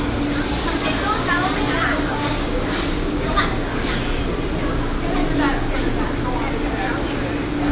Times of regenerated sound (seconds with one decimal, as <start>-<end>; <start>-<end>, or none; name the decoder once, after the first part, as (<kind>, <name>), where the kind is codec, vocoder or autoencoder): 1.9-4.2 (codec, DAC)